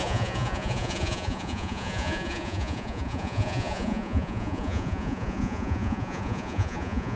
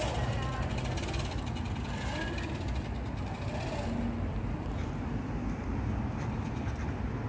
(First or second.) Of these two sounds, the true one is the second